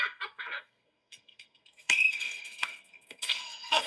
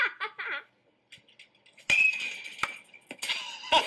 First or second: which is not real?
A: first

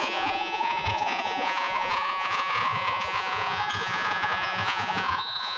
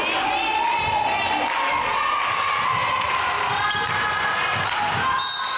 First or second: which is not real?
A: first